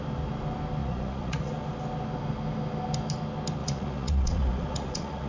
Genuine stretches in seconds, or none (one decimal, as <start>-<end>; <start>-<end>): 0.0-0.8; 1.5-3.6